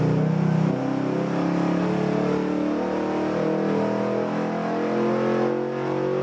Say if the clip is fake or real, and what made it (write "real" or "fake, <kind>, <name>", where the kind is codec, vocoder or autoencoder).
real